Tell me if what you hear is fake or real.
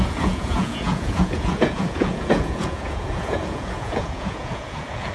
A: fake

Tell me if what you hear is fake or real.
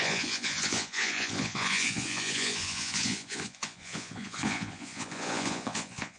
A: fake